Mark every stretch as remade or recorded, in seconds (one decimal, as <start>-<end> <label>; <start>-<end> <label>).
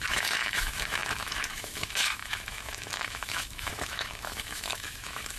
0.0-5.4 remade